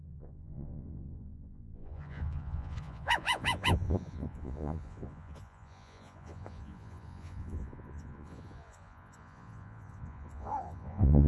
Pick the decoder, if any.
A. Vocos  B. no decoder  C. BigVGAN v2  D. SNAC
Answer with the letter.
A